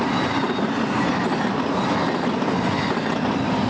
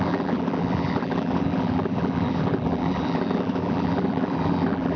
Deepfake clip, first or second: second